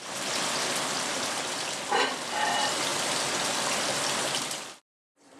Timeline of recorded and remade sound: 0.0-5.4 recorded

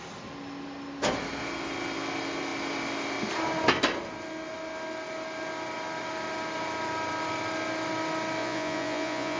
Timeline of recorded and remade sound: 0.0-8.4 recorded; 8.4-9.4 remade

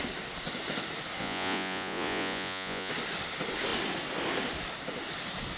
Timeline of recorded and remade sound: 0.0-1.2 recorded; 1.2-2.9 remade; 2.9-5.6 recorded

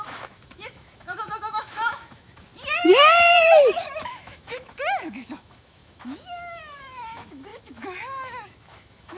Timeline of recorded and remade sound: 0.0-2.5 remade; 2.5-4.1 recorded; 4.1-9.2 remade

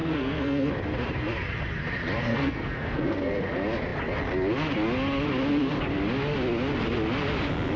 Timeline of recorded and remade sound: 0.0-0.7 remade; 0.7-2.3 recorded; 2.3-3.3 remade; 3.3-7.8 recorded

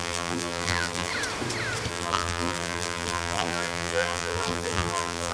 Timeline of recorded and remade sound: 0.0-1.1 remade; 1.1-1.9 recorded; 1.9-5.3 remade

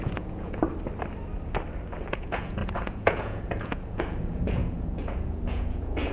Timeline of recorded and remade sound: 0.0-0.6 remade; 0.6-2.1 recorded; 2.1-6.1 remade

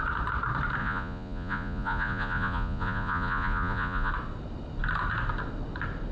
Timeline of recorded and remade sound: 0.0-0.8 recorded; 0.8-4.1 remade; 4.1-6.1 recorded